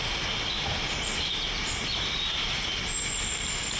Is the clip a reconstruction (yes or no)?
no